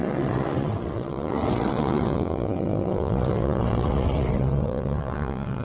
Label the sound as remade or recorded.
remade